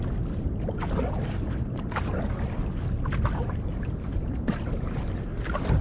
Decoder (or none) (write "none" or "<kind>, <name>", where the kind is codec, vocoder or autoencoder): none